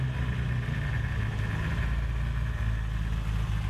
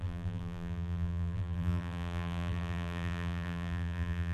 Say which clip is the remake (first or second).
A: second